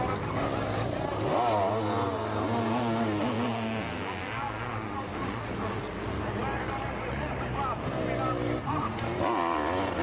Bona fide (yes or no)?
yes